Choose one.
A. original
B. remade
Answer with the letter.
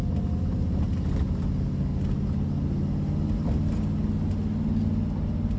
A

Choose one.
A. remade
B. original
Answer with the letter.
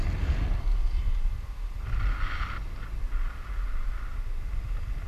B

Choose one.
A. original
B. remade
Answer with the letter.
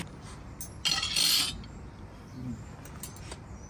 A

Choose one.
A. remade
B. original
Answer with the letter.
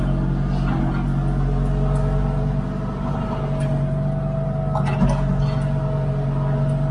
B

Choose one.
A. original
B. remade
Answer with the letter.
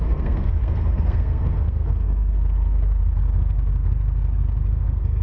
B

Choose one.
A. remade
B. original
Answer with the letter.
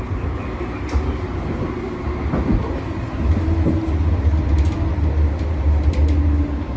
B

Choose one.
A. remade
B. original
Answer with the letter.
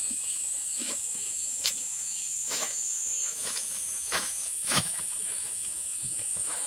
A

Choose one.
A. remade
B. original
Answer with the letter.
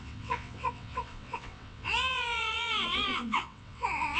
A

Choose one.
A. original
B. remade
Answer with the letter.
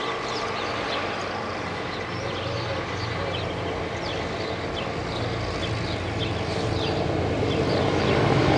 A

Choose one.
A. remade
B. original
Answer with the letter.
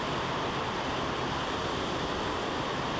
B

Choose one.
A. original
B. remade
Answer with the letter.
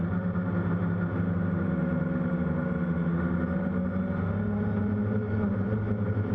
A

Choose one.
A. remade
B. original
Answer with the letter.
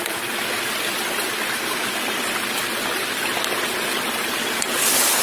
B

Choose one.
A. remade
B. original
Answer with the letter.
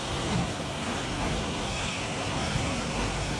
A